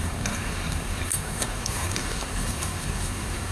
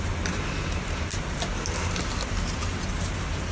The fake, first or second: first